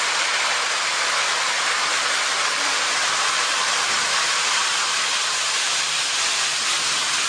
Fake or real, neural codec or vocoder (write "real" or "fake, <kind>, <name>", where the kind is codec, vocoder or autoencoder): fake, vocoder, BigVGAN v2